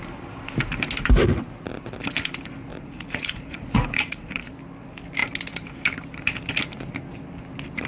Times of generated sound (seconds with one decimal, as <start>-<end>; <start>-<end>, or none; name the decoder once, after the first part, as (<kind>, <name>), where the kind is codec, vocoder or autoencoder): 2.7-4.5 (vocoder, Vocos)